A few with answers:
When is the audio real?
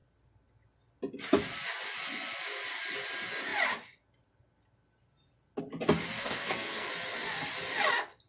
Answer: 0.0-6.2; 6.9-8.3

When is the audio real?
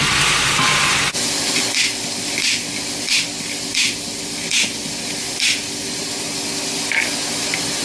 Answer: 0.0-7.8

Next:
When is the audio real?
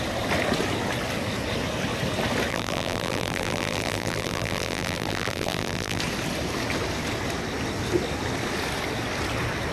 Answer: 0.0-2.5; 6.0-9.7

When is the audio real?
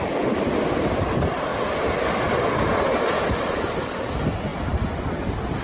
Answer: 1.5-2.8